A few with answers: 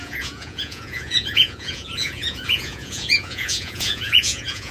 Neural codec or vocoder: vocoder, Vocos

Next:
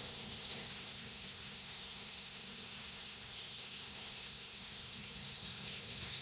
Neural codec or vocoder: codec, SNAC